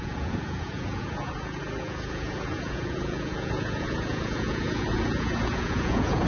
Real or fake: fake